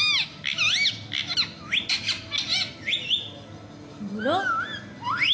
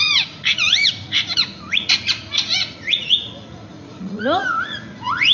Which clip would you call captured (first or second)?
first